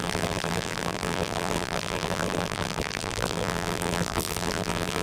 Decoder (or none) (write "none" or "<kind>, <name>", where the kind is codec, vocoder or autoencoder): vocoder, BigVGAN v2